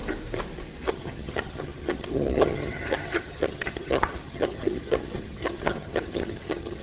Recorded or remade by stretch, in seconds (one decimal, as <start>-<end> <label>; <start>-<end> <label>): 0.0-0.9 recorded; 0.9-6.8 remade